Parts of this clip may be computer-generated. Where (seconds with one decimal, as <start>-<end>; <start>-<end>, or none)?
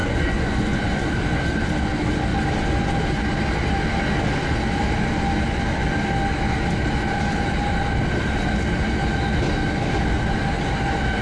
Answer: 0.0-1.1